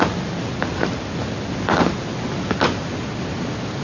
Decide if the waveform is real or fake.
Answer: real